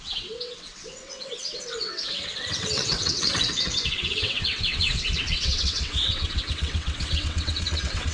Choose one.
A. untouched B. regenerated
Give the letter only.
B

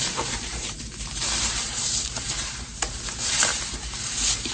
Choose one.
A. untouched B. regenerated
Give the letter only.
B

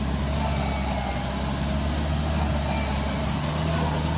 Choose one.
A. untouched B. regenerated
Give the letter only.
A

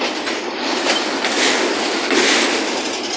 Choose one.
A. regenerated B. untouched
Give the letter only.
B